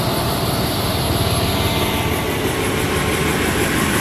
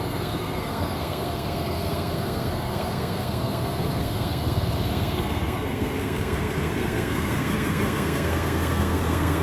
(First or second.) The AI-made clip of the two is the second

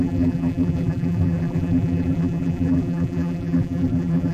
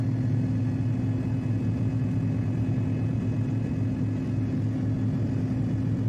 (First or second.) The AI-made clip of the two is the first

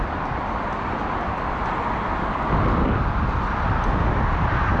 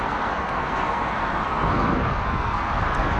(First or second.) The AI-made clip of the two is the second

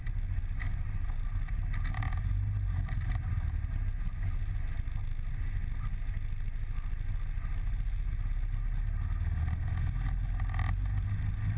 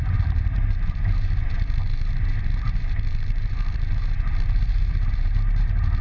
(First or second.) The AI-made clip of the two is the second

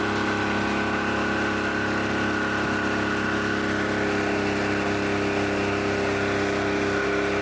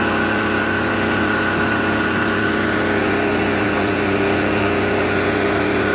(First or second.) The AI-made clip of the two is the second